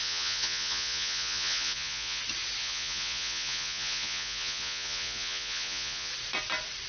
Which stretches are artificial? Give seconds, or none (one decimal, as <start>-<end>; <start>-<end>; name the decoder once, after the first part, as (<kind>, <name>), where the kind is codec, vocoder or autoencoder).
0.0-2.2 (vocoder, Vocos); 2.6-6.1